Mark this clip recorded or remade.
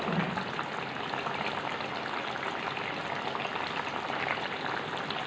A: recorded